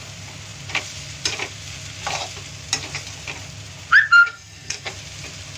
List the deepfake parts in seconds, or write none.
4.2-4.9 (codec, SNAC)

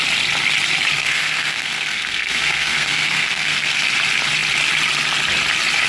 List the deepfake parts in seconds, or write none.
1.0-3.8 (codec, SNAC)

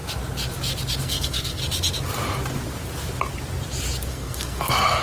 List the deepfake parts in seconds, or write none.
1.0-1.6 (codec, SNAC); 4.1-5.0

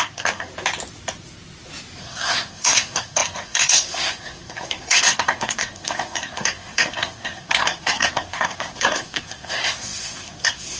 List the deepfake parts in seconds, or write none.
0.0-0.5 (codec, SNAC); 2.0-10.8